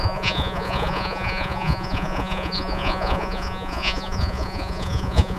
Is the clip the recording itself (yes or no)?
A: no